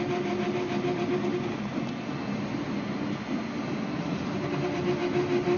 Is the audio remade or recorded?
recorded